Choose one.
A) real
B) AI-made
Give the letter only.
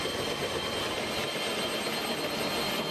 A